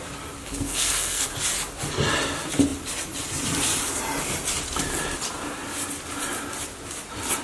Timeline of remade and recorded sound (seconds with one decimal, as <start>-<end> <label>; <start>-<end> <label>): 0.0-0.4 recorded; 0.4-1.3 remade; 1.3-7.4 recorded